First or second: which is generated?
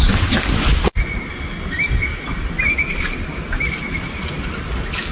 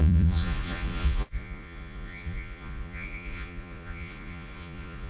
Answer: second